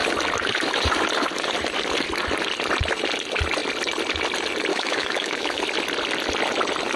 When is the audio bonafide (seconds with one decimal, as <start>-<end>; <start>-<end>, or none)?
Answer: 0.0-4.7; 5.6-7.0